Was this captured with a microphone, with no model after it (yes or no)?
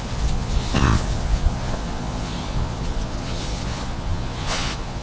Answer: no